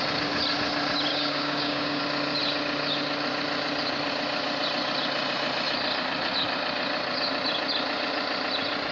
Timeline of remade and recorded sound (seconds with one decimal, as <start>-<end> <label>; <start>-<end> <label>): 0.0-1.1 recorded; 1.1-2.0 remade; 2.0-8.9 recorded